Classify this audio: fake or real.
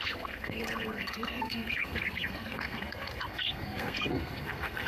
fake